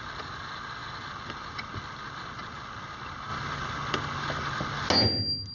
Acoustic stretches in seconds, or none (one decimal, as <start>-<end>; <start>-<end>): 0.0-5.5

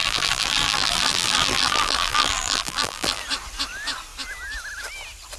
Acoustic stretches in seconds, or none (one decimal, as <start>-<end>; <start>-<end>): 3.2-5.4

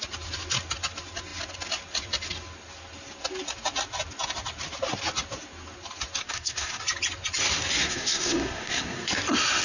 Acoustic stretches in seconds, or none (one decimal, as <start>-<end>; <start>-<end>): 0.0-6.2; 6.8-7.8; 9.1-9.6